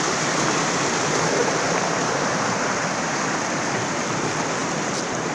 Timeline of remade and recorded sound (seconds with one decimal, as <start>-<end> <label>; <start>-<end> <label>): 0.0-5.3 recorded